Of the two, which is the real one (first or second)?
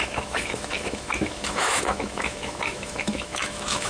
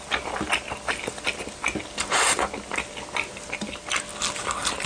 second